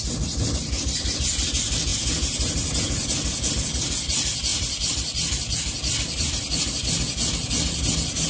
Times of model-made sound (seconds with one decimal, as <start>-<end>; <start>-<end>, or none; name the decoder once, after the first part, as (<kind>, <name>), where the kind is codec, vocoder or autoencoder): none